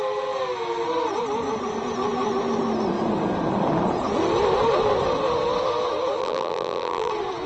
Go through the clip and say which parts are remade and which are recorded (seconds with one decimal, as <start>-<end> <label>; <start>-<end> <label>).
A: 0.0-6.2 recorded; 6.2-7.1 remade; 7.1-7.5 recorded